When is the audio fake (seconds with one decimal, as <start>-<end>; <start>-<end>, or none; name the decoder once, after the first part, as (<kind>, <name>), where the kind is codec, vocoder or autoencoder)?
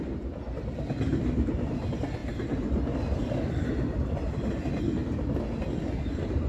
none